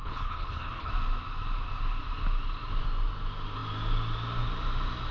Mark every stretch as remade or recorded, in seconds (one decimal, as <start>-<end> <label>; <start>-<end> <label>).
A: 0.0-0.9 remade; 0.9-5.1 recorded